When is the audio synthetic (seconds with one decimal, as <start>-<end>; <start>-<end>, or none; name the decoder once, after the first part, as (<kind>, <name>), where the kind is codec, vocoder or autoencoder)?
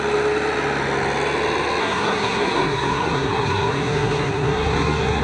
1.8-5.2 (codec, SNAC)